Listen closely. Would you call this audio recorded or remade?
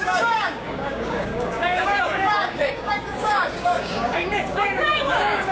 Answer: remade